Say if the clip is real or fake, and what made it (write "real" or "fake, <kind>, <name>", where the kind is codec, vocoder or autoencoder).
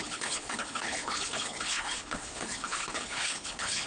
fake, codec, HILCodec